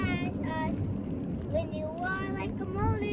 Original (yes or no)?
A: yes